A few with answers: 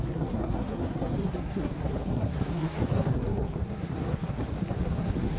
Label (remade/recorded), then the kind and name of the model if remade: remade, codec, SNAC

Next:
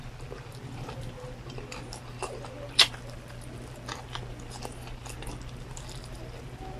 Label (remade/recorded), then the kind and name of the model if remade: remade, vocoder, BigVGAN v2